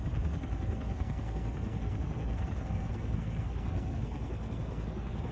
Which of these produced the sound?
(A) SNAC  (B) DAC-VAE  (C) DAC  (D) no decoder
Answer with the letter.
A